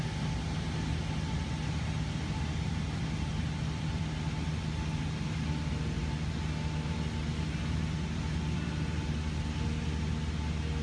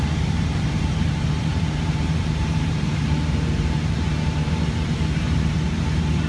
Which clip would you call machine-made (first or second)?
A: second